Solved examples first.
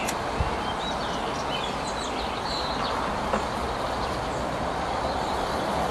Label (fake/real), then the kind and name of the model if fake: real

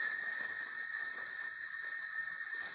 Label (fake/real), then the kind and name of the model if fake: real